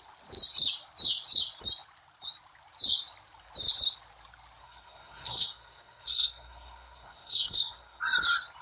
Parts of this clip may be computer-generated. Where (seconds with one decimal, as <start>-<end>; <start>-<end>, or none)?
4.6-8.0